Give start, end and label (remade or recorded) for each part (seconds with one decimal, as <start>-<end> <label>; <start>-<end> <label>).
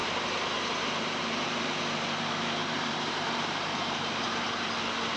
0.0-1.7 remade; 1.7-2.6 recorded; 2.6-4.7 remade; 4.7-5.2 recorded